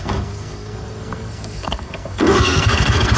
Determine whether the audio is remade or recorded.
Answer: remade